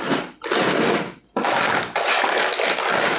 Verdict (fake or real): real